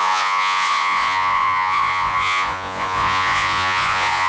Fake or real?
fake